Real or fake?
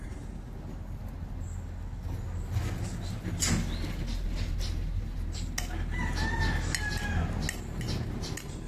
real